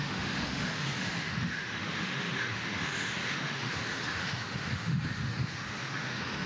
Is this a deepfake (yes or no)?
yes